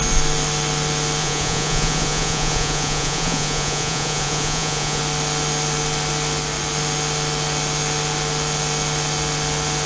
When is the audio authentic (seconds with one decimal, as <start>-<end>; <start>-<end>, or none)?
0.0-1.2; 5.0-9.9